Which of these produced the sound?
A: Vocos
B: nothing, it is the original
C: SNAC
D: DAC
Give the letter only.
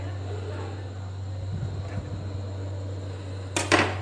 B